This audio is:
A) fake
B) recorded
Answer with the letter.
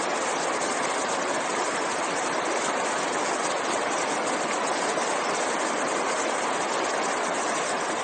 B